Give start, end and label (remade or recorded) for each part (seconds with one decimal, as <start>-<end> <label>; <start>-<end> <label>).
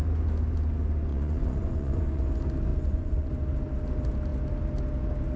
0.0-1.1 recorded; 1.1-2.2 remade; 2.2-2.7 recorded; 2.7-3.3 remade; 3.3-5.4 recorded